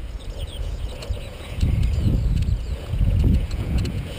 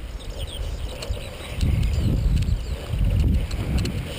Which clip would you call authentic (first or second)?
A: second